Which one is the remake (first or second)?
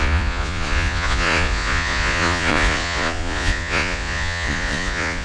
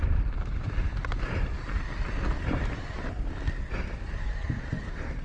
first